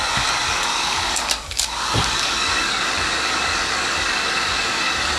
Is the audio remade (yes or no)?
yes